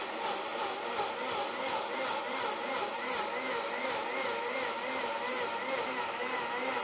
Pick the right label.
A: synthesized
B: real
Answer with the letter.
B